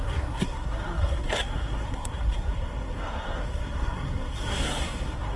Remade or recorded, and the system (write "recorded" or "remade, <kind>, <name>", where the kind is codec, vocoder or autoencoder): remade, codec, SNAC